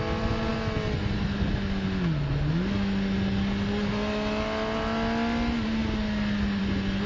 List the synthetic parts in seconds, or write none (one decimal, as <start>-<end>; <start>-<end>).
none